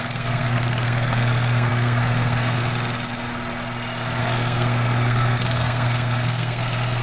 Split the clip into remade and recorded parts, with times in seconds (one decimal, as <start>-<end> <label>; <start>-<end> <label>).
0.0-2.6 remade; 2.6-4.2 recorded; 4.2-7.0 remade